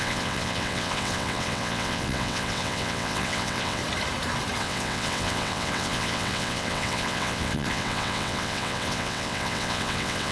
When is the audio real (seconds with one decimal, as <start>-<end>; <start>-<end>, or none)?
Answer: 3.8-4.6